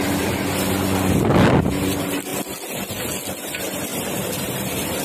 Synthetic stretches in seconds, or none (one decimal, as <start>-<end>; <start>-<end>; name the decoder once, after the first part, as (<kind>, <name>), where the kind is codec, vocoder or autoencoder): none